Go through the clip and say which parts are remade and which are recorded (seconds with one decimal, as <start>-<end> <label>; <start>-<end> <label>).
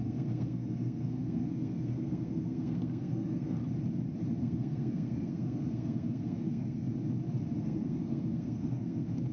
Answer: 0.0-3.6 remade; 3.6-4.4 recorded; 4.4-6.9 remade; 6.9-7.6 recorded; 7.6-9.3 remade